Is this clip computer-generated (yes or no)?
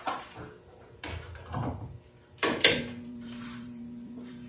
yes